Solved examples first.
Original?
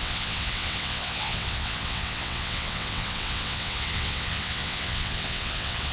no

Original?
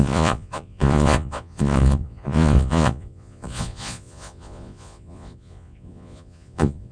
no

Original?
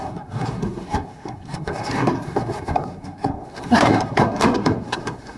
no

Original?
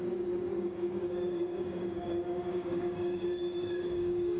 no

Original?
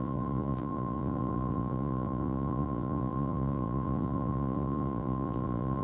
no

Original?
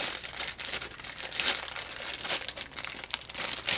yes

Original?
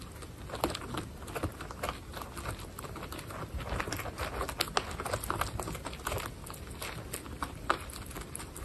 yes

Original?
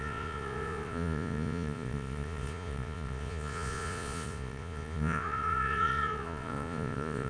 no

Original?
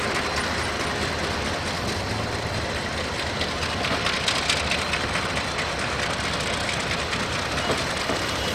yes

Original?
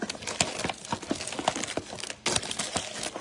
yes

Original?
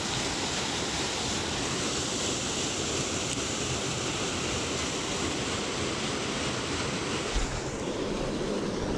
yes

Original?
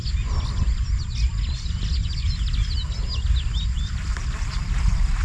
yes